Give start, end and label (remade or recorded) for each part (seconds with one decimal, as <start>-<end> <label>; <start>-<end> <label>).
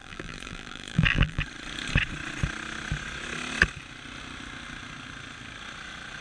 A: 0.0-1.4 remade; 1.4-6.2 recorded